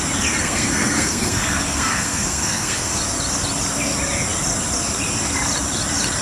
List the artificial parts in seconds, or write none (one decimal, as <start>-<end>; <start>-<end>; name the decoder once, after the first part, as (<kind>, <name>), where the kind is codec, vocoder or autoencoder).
0.4-3.0 (codec, SNAC)